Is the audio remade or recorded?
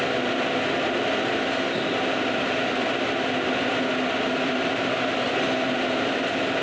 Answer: recorded